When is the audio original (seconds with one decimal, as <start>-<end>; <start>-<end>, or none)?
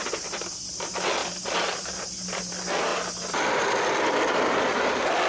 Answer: 0.0-5.3